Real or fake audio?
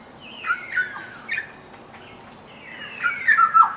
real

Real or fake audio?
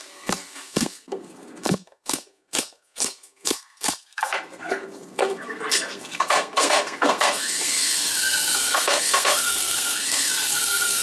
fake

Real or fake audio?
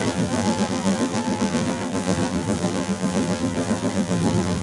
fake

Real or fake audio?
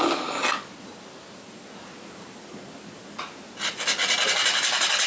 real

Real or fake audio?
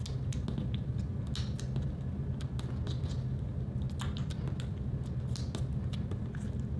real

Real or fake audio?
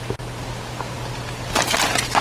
real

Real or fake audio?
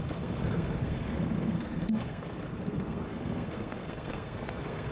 fake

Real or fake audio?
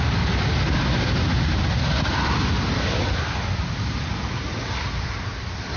real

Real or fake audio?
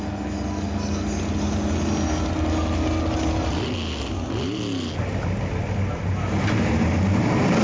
real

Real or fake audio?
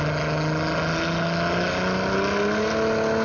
real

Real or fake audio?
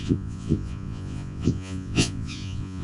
fake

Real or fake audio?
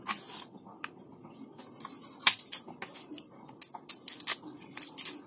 real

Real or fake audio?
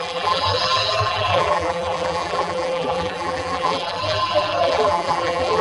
fake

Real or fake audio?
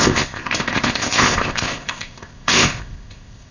fake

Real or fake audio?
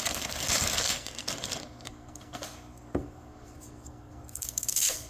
fake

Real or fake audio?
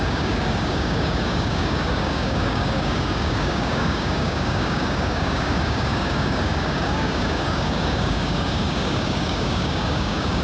fake